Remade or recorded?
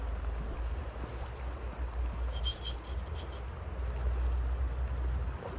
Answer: recorded